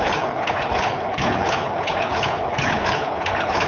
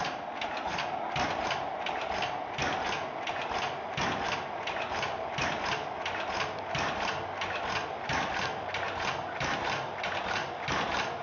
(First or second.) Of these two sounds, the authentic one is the second